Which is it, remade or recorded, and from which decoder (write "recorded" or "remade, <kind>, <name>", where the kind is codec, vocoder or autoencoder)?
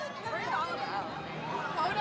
recorded